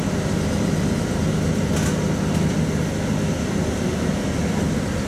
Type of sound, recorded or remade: recorded